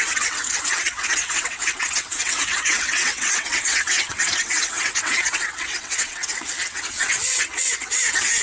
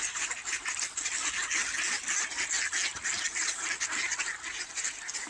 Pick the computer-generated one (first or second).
first